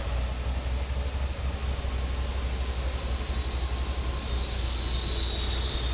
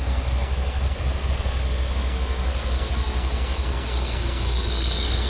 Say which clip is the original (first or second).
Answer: first